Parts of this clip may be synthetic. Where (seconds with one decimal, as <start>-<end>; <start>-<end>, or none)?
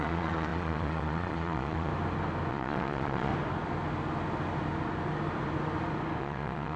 0.0-1.9; 2.5-3.3; 6.2-6.8